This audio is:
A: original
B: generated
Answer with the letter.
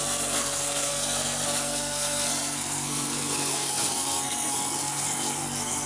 B